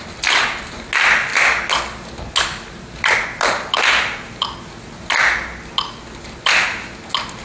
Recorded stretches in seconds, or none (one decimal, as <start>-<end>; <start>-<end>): 0.0-7.4